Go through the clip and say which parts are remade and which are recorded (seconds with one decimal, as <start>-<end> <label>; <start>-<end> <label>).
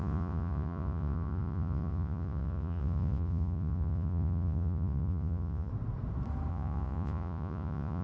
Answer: 0.0-5.7 remade; 5.7-6.5 recorded; 6.5-8.0 remade